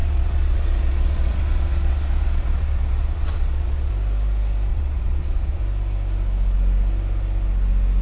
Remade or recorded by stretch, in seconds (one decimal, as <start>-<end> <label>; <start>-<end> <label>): 0.0-3.9 remade; 3.9-4.7 recorded; 4.7-5.6 remade; 5.6-8.0 recorded